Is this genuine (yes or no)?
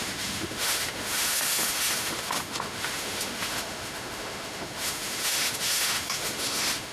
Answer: no